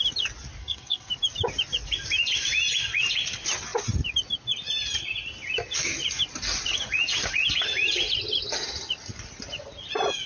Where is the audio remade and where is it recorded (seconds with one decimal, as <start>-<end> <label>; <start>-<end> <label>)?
0.0-0.6 recorded; 0.6-1.1 remade; 1.1-10.3 recorded